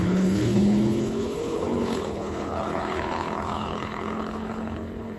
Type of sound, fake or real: fake